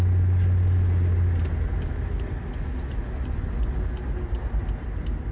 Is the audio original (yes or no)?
yes